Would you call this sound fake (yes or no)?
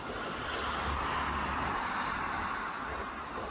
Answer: no